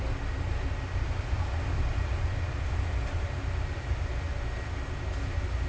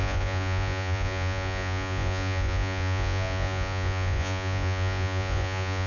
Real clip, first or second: first